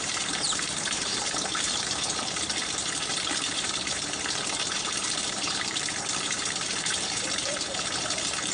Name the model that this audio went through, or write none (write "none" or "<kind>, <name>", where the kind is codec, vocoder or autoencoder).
vocoder, BigVGAN v2